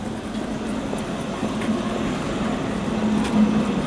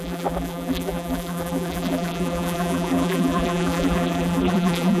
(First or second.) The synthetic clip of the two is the second